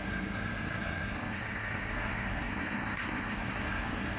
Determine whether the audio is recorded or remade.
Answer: remade